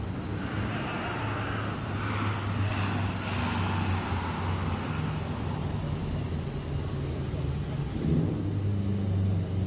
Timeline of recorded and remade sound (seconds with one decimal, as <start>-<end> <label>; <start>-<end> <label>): 0.0-9.7 recorded